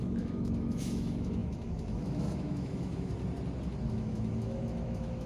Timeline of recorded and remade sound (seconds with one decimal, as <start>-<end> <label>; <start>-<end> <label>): 0.0-3.1 remade; 3.1-3.9 recorded; 3.9-5.3 remade